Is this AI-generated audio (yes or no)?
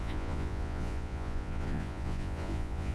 yes